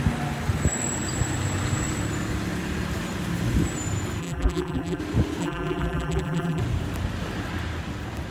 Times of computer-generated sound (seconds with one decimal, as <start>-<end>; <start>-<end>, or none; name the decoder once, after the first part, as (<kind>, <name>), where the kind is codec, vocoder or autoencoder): 4.2-5.0 (vocoder, BigVGAN v2); 5.4-6.6